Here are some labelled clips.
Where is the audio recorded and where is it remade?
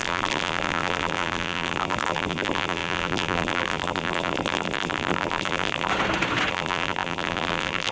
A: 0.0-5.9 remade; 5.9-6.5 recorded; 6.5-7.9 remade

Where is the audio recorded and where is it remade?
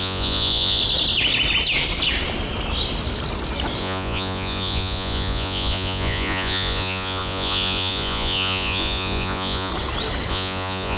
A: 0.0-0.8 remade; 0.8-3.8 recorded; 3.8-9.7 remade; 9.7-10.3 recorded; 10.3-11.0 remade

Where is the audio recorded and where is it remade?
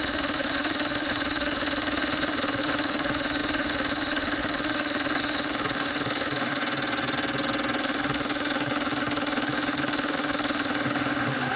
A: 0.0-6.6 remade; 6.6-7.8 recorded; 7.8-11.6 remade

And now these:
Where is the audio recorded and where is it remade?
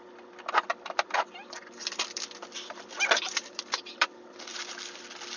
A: 0.0-5.4 remade